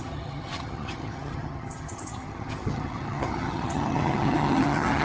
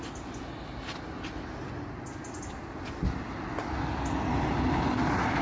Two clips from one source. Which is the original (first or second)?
second